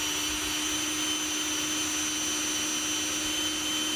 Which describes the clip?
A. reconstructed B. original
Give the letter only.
B